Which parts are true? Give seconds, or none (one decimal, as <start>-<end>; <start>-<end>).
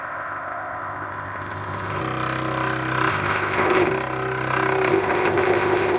2.0-3.1; 3.9-4.9